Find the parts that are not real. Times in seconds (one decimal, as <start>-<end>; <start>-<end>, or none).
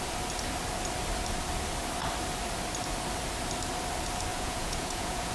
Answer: 4.3-5.3